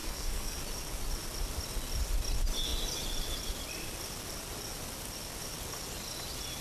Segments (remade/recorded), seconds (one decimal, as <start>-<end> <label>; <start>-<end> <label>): 0.0-0.6 remade; 0.6-6.6 recorded